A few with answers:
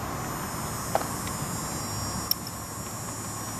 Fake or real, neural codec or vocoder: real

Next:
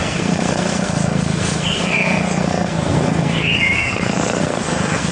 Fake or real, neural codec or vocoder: fake, codec, SNAC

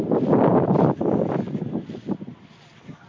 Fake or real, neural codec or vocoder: real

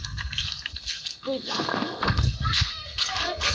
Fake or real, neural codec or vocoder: fake, codec, SNAC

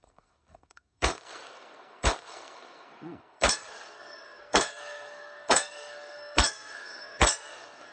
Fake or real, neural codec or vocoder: fake, codec, SNAC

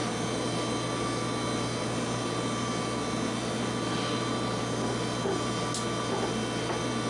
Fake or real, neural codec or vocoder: real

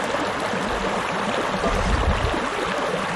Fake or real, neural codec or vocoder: real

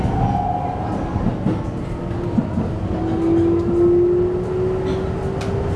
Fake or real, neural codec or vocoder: real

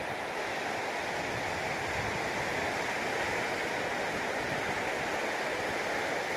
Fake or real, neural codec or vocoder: real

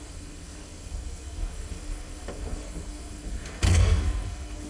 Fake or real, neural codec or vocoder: fake, codec, SNAC